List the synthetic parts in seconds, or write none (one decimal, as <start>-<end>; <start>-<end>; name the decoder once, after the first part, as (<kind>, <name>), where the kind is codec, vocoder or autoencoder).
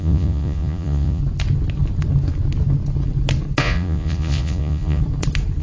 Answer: 0.0-1.2 (vocoder, Vocos); 3.6-5.0